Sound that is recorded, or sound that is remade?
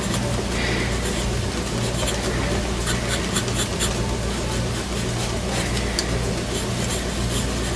recorded